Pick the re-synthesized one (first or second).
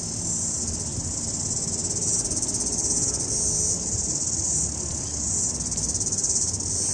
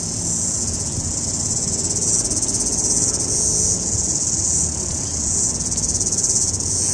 second